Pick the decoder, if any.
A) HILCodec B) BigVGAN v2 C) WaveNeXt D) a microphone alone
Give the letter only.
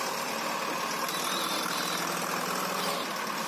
D